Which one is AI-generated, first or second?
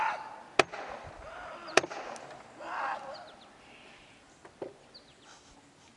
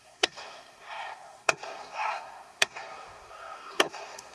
second